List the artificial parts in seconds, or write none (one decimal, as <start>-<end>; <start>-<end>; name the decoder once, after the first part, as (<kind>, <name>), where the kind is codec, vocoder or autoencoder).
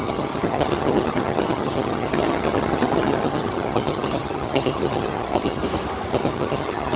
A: 0.0-5.6 (vocoder, HiFi-GAN); 6.1-7.0